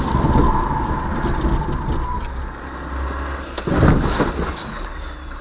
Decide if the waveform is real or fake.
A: real